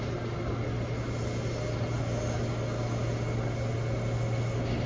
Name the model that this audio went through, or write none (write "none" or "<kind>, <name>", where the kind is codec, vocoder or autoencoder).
none